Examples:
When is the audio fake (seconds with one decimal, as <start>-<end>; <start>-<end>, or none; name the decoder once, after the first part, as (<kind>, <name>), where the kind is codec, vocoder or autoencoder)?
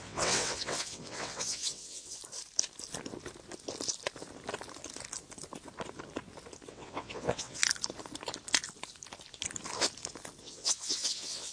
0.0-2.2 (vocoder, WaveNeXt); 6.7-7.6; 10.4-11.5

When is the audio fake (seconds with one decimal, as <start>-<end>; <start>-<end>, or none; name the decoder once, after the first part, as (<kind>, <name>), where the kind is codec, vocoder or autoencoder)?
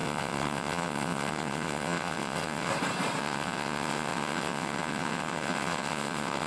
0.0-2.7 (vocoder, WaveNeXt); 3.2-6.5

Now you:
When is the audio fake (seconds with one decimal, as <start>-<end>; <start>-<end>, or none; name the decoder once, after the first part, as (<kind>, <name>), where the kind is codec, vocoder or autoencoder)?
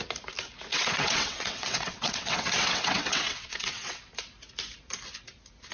0.7-4.1 (vocoder, WaveNeXt)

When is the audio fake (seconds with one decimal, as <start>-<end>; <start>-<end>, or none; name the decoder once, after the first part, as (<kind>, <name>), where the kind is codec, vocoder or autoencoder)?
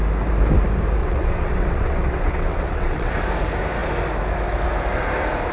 1.0-3.1 (vocoder, WaveNeXt)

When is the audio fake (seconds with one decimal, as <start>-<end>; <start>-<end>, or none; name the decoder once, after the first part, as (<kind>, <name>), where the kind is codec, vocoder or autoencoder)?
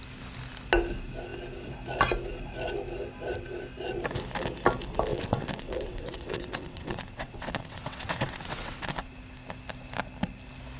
5.1-9.1 (vocoder, WaveNeXt)